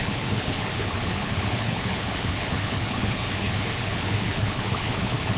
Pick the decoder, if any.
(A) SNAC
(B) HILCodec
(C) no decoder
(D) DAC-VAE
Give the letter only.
B